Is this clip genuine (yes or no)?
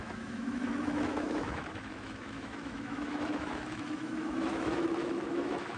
no